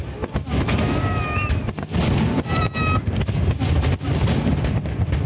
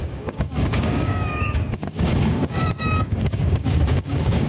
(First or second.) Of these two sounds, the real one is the first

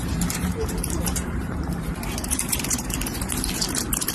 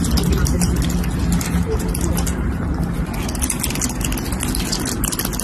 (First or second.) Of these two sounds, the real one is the second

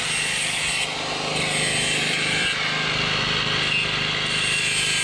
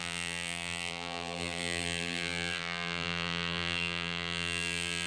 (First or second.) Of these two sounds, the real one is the first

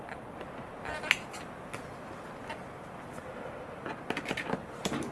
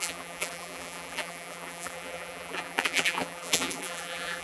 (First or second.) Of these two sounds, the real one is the first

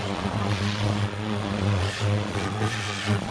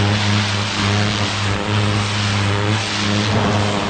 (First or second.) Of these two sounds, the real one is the second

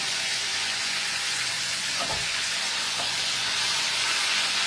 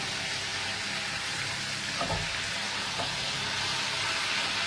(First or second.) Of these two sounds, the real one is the second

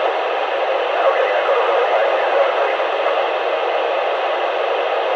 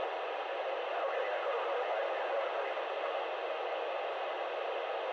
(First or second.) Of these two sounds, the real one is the second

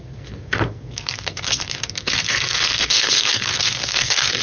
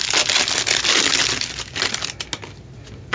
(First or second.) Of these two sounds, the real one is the second